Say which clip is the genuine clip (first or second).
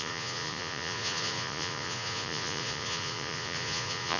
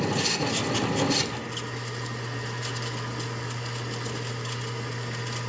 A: second